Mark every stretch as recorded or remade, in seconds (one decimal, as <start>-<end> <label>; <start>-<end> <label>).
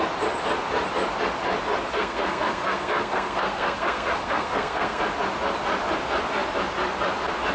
0.0-1.9 recorded; 1.9-5.0 remade; 5.0-7.5 recorded